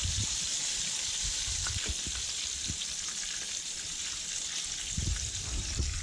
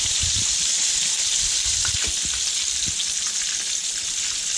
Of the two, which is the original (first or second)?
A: second